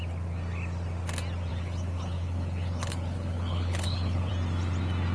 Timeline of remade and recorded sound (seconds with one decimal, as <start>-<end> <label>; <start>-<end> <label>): 0.0-1.5 recorded; 1.5-4.3 remade; 4.3-5.1 recorded